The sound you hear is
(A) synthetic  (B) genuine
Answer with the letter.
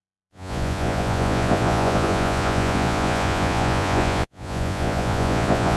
A